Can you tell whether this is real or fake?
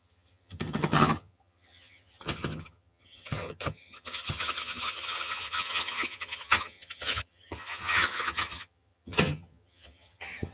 fake